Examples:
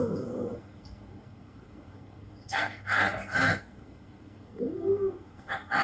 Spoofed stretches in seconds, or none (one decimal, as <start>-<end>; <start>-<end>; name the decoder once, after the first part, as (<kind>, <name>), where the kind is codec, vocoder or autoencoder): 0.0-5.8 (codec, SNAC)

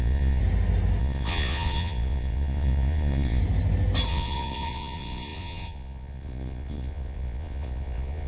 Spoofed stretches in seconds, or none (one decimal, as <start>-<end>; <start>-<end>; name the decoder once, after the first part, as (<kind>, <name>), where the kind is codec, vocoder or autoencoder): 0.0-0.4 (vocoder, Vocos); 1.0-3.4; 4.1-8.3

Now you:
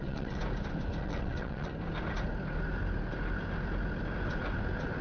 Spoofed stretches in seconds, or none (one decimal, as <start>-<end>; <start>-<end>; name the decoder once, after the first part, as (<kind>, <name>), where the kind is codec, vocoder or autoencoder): 0.0-0.4 (vocoder, WaveNeXt); 1.0-1.7

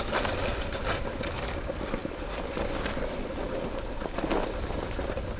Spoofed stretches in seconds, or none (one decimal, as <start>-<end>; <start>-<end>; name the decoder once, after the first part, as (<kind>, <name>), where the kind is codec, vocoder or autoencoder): none